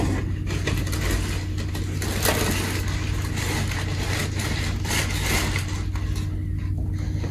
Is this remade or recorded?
recorded